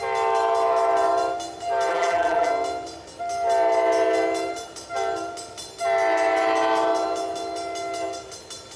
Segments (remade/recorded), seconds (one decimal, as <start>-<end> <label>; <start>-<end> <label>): 0.0-1.9 recorded; 1.9-2.5 remade; 2.5-8.8 recorded